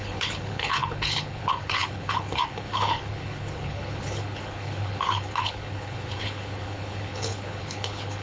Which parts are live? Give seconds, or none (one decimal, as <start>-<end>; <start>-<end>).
none